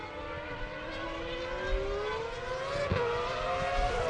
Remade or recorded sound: recorded